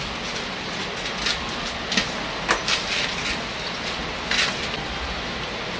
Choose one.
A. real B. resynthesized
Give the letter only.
A